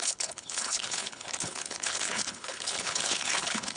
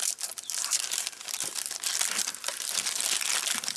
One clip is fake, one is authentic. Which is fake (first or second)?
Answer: first